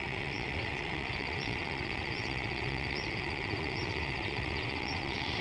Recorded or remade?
remade